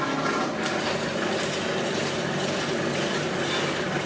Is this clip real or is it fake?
real